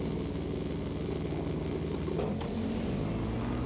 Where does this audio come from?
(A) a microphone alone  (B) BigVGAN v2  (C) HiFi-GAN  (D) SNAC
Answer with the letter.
A